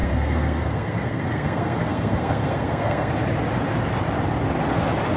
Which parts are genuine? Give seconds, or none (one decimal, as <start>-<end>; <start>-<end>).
3.1-5.2